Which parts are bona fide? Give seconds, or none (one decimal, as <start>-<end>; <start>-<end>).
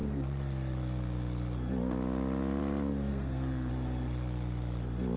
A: 0.0-3.1; 3.7-5.2